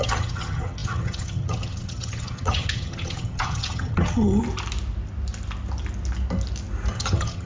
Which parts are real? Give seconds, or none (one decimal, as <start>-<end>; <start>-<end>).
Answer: 4.4-6.9